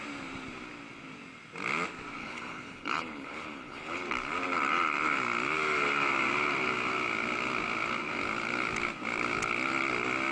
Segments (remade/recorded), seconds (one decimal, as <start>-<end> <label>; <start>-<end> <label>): 0.0-2.2 recorded; 2.2-4.0 remade; 4.0-10.3 recorded